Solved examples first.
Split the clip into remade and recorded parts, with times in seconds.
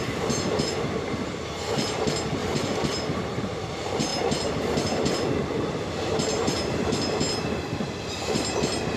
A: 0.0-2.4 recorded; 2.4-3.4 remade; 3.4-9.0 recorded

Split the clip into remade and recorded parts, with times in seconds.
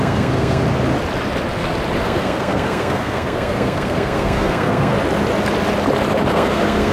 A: 0.0-0.6 remade; 0.6-2.0 recorded; 2.0-4.9 remade; 4.9-6.3 recorded; 6.3-6.9 remade